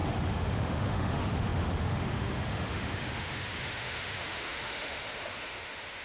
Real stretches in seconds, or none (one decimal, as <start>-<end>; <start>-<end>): none